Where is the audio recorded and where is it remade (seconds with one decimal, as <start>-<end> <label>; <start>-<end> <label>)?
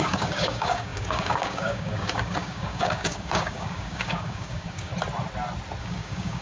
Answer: 0.0-4.9 remade; 4.9-5.8 recorded; 5.8-6.4 remade